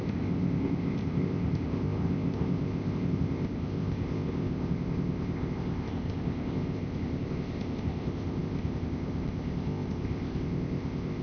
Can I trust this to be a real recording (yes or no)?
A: no